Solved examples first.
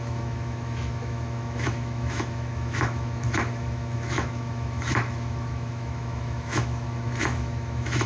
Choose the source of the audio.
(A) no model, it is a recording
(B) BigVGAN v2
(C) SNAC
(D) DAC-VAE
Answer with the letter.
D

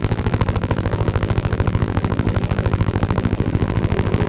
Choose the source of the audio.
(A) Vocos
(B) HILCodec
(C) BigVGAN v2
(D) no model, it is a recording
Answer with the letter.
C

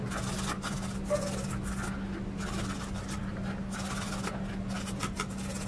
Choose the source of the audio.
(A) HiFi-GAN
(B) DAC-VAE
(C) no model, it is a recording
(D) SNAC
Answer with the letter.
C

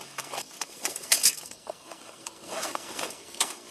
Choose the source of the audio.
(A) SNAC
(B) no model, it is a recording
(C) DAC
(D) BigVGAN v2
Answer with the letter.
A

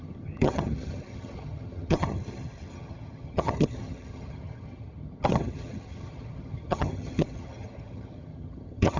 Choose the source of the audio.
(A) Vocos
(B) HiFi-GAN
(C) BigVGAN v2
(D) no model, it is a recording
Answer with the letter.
B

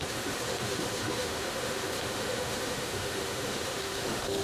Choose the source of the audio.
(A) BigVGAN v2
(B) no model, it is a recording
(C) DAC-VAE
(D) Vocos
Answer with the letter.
C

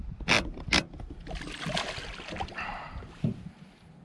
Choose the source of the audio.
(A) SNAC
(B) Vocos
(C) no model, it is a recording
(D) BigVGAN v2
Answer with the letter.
C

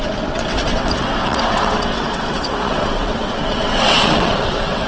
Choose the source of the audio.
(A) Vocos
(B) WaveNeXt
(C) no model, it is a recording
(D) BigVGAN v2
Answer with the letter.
B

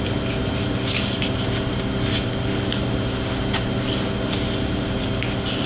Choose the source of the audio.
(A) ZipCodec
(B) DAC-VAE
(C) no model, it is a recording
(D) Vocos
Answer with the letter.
C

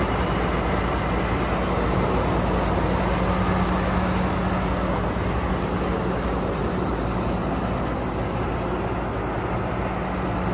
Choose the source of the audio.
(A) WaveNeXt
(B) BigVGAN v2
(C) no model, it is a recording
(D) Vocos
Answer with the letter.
C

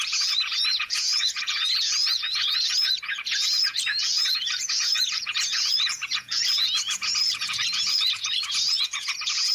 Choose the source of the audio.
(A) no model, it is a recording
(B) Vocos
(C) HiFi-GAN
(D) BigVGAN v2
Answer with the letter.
B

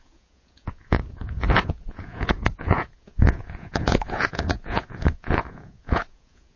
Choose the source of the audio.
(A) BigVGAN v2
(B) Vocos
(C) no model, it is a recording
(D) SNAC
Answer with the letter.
B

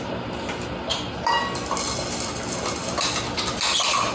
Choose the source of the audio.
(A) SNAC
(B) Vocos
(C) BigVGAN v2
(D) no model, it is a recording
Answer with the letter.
D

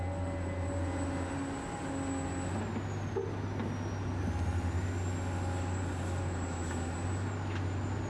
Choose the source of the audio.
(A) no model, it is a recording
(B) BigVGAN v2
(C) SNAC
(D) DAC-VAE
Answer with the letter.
A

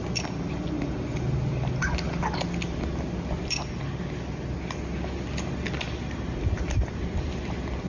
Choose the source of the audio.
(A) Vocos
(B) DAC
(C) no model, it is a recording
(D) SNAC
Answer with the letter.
C